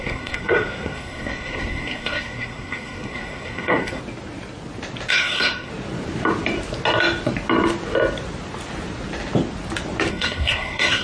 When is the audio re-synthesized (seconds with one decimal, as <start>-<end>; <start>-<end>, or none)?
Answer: 0.0-4.0; 5.1-5.7; 10.1-11.0